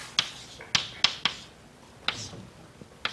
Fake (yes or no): no